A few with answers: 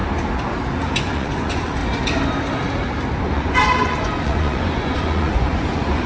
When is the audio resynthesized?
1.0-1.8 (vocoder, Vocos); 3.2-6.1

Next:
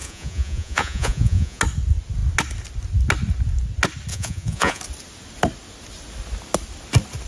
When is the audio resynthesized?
0.0-1.6 (vocoder, Vocos); 4.1-4.8

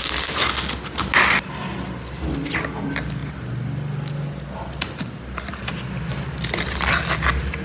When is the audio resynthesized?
none

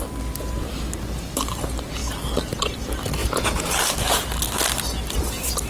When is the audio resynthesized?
3.2-3.8 (vocoder, Vocos)

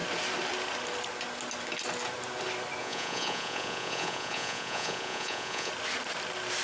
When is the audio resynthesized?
2.8-5.7 (vocoder, Vocos)